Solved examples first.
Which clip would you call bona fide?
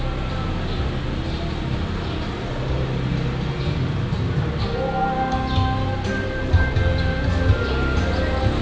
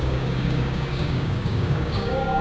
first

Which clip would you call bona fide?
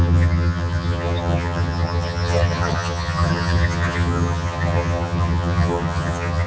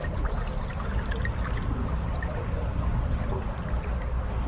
second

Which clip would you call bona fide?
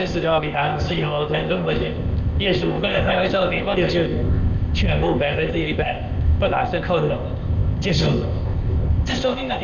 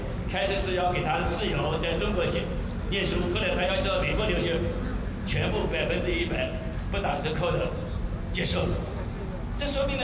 second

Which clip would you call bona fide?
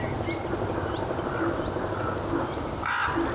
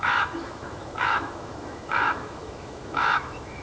first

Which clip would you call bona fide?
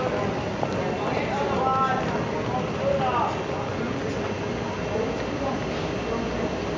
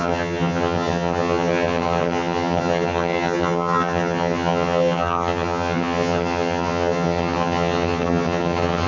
first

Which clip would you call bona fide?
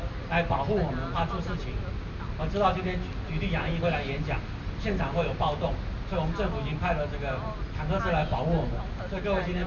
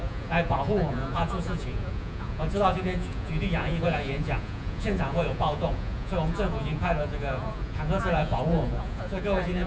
first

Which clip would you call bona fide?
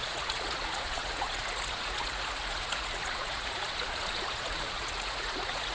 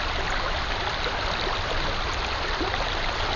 second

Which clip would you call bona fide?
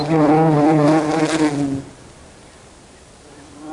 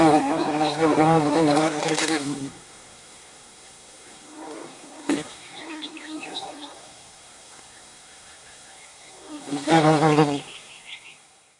first